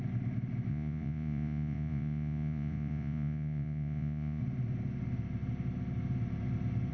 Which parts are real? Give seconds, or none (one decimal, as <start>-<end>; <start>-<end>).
0.0-0.7; 4.4-6.9